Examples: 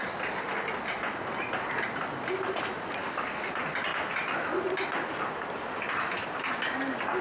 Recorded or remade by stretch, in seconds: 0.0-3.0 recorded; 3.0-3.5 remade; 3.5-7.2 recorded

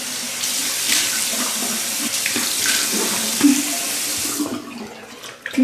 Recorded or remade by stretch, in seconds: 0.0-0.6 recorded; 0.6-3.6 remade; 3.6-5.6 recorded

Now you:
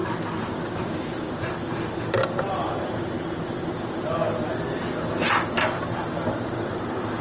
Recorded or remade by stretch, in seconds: 0.0-7.2 recorded